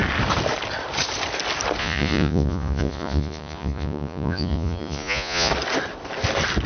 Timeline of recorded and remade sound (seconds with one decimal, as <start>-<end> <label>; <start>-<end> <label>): 0.0-1.8 recorded; 1.8-5.5 remade; 5.5-6.7 recorded